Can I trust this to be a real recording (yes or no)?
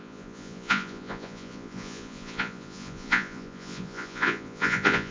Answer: no